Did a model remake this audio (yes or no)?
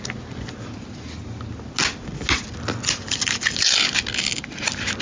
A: no